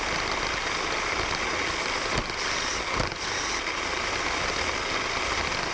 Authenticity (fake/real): real